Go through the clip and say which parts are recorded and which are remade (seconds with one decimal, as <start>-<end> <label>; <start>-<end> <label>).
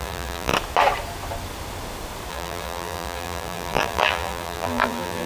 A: 0.0-0.5 remade; 0.5-2.3 recorded; 2.3-5.3 remade